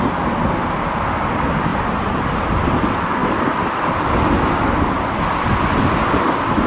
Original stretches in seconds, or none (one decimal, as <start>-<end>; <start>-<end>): 0.0-1.7; 2.6-6.7